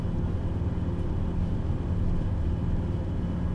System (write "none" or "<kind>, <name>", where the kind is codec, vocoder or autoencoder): none